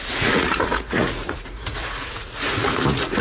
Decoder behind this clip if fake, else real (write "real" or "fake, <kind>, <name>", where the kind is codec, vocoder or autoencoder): fake, vocoder, Vocos